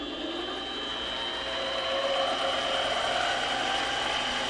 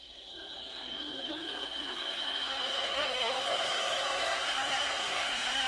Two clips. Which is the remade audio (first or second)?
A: second